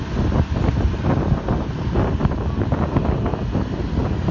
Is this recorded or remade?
recorded